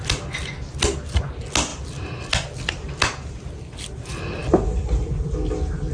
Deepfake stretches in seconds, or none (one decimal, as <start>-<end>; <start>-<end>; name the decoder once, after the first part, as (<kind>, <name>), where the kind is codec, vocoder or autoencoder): none

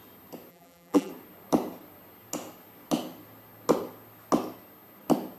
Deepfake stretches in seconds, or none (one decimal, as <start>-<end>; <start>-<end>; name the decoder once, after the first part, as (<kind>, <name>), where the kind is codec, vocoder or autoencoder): 0.5-1.1 (vocoder, BigVGAN v2)

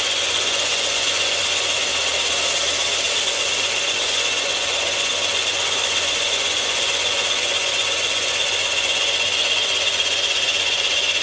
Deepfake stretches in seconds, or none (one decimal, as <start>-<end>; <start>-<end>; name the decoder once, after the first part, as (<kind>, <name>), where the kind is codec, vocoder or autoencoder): 0.0-1.9 (vocoder, Vocos); 3.2-11.2

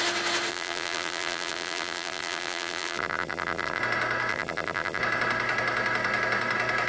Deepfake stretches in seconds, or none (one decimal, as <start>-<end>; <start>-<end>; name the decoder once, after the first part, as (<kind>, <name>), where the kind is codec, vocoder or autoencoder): 0.5-3.8 (vocoder, BigVGAN v2); 4.3-5.0